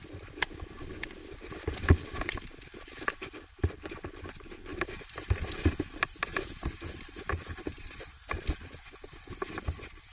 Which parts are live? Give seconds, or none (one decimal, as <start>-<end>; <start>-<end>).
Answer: 0.0-10.1